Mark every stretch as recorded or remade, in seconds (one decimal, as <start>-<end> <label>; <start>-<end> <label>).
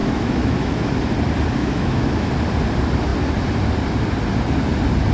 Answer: 0.0-0.9 remade; 0.9-1.6 recorded; 1.6-2.3 remade; 2.3-5.1 recorded